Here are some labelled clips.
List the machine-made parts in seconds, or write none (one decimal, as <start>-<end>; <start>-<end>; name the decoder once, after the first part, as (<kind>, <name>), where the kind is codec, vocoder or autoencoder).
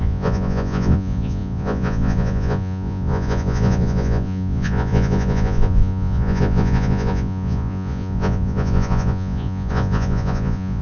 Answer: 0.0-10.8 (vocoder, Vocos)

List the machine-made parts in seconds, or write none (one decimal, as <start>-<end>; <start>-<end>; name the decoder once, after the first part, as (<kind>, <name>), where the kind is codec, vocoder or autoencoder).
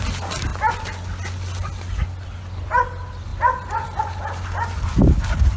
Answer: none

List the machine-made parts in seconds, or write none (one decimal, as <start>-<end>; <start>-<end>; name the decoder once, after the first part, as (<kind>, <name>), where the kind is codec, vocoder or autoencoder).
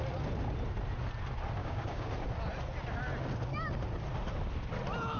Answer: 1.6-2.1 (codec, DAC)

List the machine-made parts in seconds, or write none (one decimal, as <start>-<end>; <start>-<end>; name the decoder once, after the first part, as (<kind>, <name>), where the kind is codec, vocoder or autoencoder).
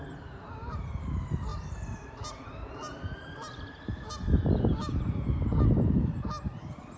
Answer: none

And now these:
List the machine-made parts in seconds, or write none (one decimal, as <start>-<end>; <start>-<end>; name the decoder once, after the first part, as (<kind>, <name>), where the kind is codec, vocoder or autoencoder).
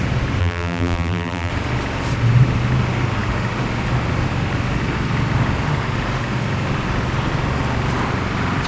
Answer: 0.4-1.5 (vocoder, BigVGAN v2)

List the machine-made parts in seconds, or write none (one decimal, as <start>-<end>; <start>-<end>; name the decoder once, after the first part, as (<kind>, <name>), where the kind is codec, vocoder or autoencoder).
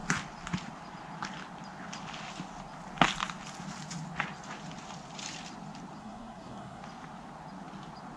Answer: 6.0-6.8 (codec, SNAC)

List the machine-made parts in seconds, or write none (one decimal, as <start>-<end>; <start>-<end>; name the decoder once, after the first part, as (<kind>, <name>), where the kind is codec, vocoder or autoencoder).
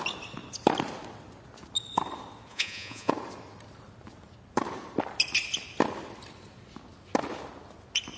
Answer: 2.5-3.1 (vocoder, Vocos)